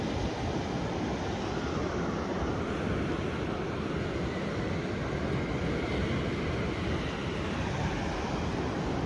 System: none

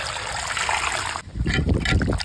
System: none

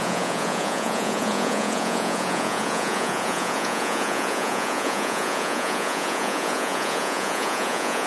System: vocoder, Vocos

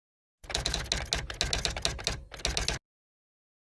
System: none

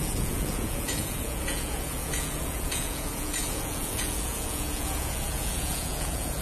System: vocoder, Vocos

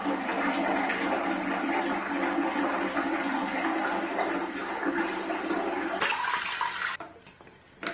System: none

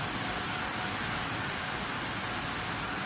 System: none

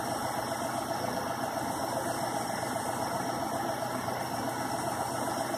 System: none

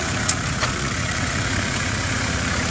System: vocoder, Vocos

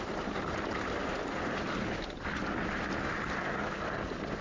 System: none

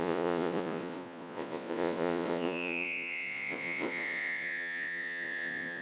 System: vocoder, Vocos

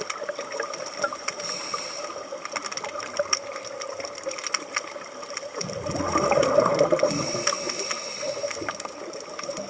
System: none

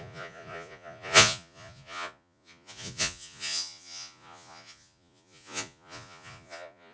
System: vocoder, Vocos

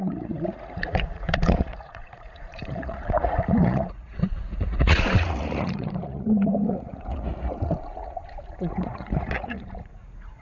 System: vocoder, Vocos